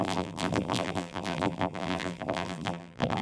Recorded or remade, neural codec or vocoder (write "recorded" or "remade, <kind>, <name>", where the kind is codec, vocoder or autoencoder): remade, vocoder, BigVGAN v2